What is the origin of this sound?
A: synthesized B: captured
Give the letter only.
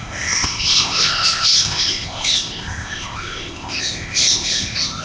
A